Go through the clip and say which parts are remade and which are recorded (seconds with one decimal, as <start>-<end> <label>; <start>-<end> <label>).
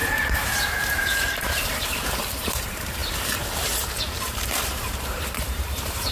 0.0-3.0 remade; 3.0-4.2 recorded; 4.2-6.1 remade